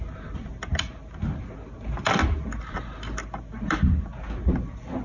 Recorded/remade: recorded